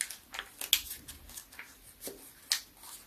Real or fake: real